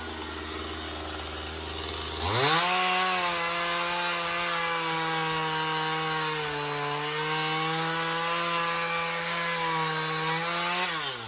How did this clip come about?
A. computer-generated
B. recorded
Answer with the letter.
B